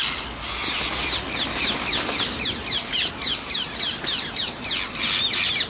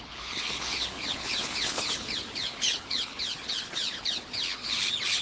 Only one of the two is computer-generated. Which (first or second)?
second